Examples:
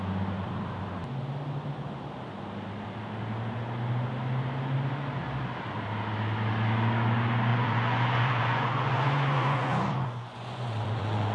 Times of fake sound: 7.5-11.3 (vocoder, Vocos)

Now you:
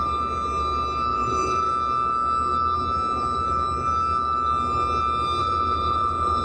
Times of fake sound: 1.1-1.7 (vocoder, Vocos); 5.4-6.4

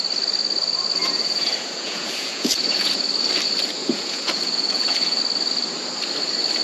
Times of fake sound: 1.0-3.0 (vocoder, Vocos); 3.8-5.2

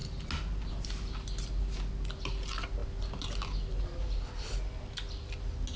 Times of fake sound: none

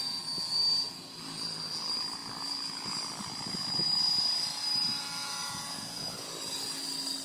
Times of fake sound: 2.2-3.0 (vocoder, Vocos); 5.2-6.3

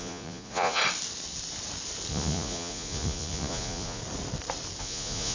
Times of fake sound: 0.0-0.8 (vocoder, Vocos); 2.1-4.0; 4.8-5.3